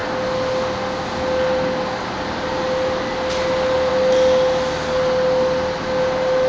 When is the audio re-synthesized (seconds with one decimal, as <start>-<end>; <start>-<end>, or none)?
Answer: none

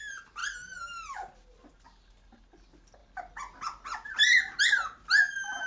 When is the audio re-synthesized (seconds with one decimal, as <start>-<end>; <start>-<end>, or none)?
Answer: none

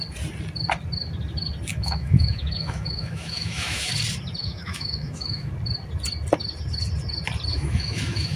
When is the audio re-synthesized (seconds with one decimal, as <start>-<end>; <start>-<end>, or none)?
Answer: 1.7-3.9; 4.4-5.5; 7.5-8.4